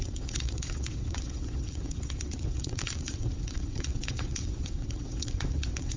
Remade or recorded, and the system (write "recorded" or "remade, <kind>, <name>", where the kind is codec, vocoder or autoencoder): remade, vocoder, WaveNeXt